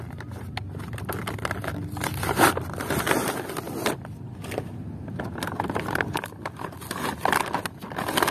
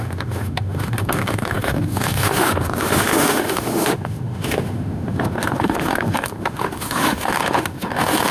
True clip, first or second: first